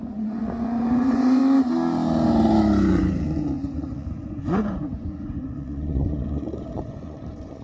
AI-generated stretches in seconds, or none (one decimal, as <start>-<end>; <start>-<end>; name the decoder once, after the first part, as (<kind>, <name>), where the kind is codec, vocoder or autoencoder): 0.0-1.4 (vocoder, Vocos); 2.9-7.6